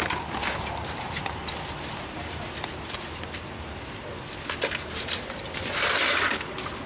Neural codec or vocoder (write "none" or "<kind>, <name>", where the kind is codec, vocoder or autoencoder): none